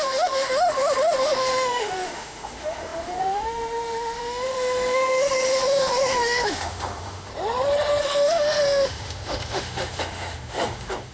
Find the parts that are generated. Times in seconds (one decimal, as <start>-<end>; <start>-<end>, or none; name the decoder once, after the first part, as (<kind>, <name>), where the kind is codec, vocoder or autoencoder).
0.0-7.3 (autoencoder, DAC-VAE); 8.0-11.1